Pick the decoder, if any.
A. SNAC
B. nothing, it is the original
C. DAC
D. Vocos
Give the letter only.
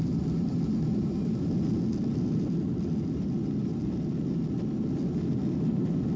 B